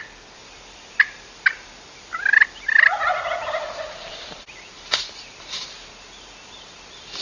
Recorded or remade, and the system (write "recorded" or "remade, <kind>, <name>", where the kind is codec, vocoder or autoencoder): recorded